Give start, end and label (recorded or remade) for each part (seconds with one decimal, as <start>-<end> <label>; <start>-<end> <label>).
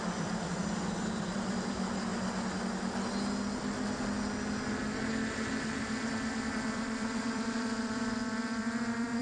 0.0-2.1 remade; 2.1-5.8 recorded; 5.8-9.2 remade